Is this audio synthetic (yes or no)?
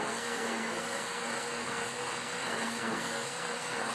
yes